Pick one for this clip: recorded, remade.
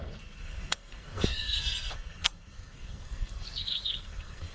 remade